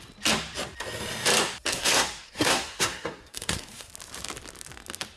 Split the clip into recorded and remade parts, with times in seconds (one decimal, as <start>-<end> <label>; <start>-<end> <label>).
0.0-1.7 recorded; 1.7-3.9 remade; 3.9-5.2 recorded